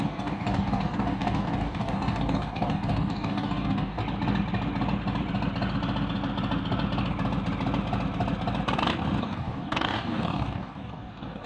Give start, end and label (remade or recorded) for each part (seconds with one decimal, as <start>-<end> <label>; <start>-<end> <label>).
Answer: 0.0-4.0 remade; 4.0-9.2 recorded; 9.2-11.5 remade

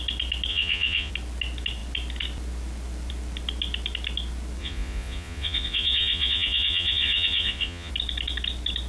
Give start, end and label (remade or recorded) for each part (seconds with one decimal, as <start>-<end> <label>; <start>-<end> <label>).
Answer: 0.0-0.5 recorded; 0.5-1.1 remade; 1.1-4.6 recorded; 4.6-7.9 remade; 7.9-8.9 recorded

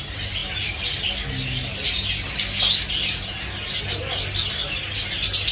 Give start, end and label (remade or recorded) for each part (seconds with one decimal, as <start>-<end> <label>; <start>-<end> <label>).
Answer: 0.0-5.5 recorded

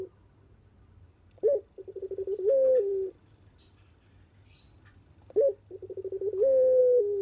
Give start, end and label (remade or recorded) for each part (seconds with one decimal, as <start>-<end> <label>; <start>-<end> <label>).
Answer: 0.0-7.2 recorded